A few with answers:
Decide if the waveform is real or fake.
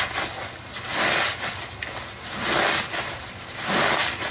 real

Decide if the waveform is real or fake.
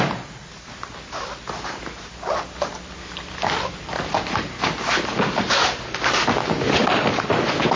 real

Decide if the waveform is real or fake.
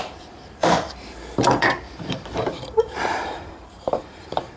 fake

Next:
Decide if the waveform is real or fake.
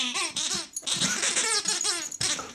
fake